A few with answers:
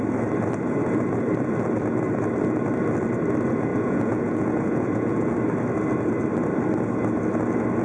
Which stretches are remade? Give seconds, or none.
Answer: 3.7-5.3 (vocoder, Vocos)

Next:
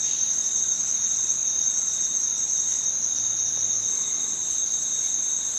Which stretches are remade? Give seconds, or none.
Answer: none

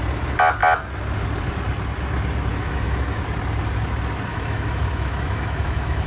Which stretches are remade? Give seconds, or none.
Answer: 2.5-3.2 (autoencoder, DAC-VAE); 4.3-6.1

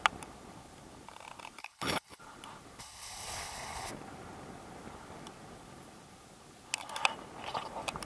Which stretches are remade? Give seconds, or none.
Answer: 1.6-2.2 (codec, HILCodec); 2.8-3.9

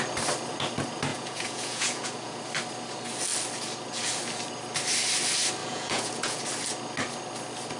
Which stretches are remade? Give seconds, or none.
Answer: 1.1-2.4 (vocoder, Vocos); 5.6-6.4